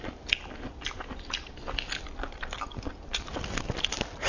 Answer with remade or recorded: recorded